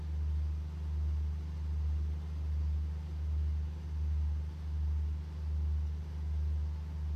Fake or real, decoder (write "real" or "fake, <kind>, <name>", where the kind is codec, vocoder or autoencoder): real